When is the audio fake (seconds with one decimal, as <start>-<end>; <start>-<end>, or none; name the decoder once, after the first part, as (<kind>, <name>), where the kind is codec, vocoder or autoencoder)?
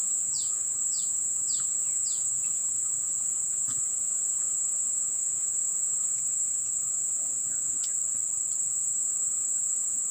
0.0-8.0 (vocoder, Vocos); 8.6-10.1